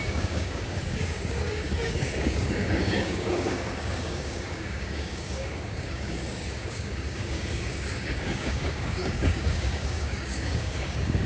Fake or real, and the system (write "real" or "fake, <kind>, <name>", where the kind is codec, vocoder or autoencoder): fake, codec, DAC